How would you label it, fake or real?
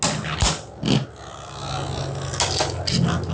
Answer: real